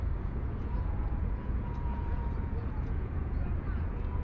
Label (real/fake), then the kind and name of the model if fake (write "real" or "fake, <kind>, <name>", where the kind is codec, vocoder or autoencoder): fake, vocoder, Vocos